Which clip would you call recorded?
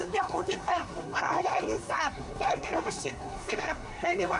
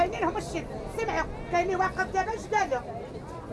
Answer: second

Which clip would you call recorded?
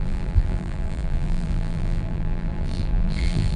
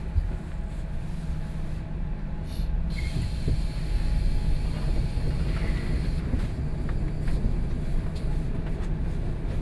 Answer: second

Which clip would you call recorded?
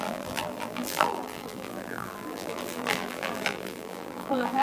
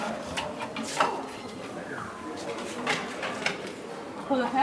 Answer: second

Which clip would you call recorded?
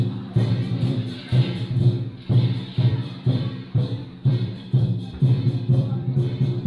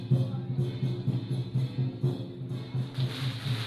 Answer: second